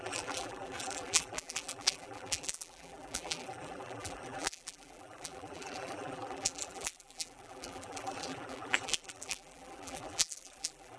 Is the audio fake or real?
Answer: fake